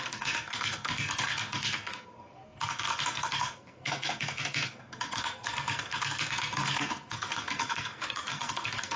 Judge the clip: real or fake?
fake